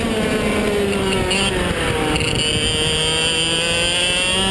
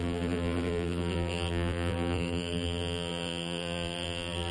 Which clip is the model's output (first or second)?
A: second